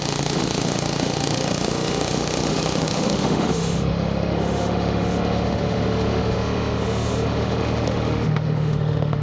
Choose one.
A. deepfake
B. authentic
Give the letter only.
A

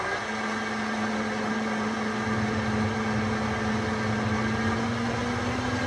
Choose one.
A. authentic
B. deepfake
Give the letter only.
A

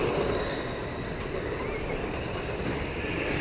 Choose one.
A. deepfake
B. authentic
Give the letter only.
B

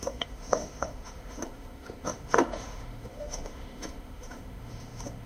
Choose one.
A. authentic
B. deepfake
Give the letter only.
B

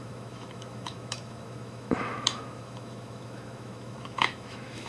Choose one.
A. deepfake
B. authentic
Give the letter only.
A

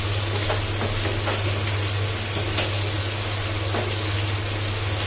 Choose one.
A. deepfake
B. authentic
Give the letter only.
B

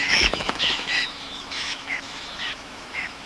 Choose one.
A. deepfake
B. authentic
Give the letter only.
A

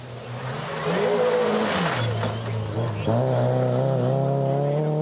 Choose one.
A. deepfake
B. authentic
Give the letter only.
B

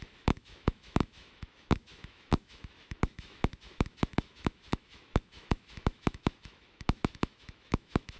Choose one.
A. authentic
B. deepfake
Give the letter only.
B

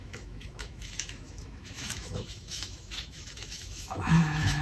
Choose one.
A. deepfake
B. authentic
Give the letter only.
A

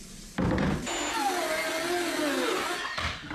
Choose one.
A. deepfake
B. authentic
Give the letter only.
B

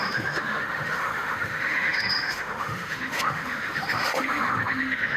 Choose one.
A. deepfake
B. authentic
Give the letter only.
A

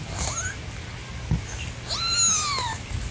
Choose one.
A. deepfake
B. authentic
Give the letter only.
B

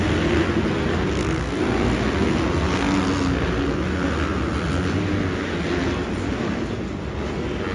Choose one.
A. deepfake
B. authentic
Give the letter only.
B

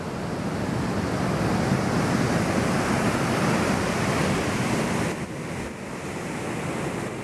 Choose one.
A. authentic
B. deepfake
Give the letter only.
A